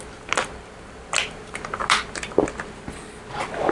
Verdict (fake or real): real